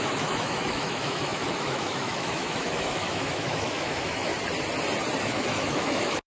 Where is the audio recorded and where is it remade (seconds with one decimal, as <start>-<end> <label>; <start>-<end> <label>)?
0.0-4.3 remade; 4.3-5.2 recorded; 5.2-6.3 remade